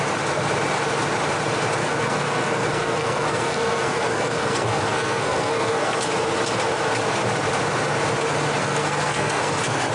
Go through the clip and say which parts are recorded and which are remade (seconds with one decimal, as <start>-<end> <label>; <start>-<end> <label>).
0.0-1.8 recorded; 1.8-6.1 remade; 6.1-8.6 recorded; 8.6-9.9 remade

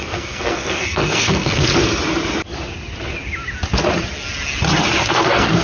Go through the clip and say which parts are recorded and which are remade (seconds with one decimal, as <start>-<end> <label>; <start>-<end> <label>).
0.0-1.7 remade; 1.7-5.1 recorded; 5.1-5.6 remade

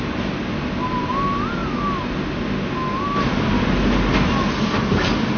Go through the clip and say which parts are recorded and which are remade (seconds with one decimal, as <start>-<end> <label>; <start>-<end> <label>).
0.0-5.4 recorded

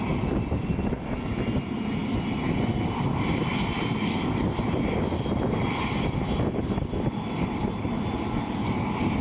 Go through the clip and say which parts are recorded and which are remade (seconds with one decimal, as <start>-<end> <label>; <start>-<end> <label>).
0.0-9.2 recorded